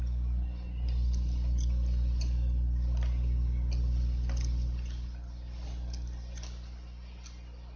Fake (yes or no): no